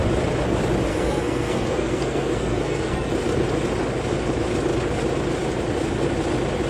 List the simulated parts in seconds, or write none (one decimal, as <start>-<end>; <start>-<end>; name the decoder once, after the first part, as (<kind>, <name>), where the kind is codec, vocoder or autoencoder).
0.9-3.1 (codec, SNAC)